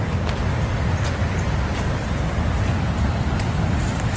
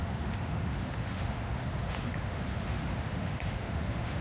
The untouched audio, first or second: first